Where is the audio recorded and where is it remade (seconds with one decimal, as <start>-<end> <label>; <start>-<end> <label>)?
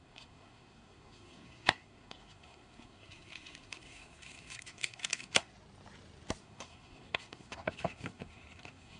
0.0-5.5 remade; 5.5-6.4 recorded; 6.4-9.0 remade